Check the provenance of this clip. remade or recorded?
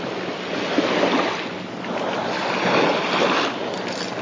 recorded